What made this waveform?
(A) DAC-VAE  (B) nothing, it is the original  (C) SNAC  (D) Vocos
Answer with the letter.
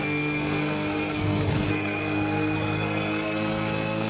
C